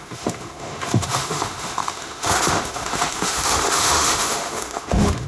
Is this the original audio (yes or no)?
no